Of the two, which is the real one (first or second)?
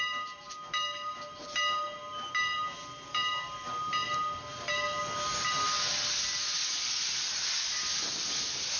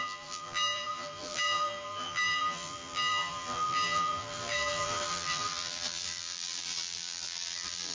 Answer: first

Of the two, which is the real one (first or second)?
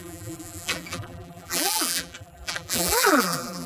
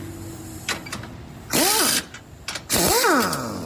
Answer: second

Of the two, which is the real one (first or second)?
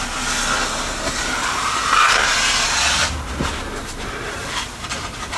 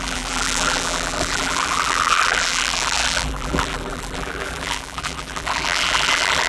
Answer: first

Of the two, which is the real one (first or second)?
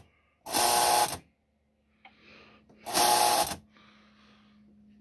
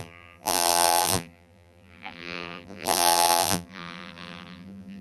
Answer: first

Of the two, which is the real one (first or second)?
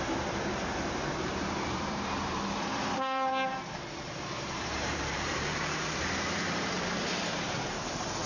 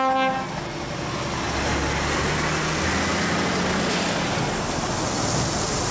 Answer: second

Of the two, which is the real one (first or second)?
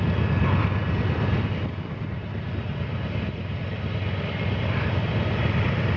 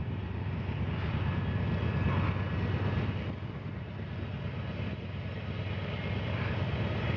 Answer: second